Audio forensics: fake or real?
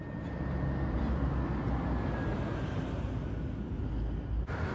real